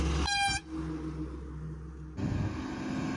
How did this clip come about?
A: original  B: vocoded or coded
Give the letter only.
A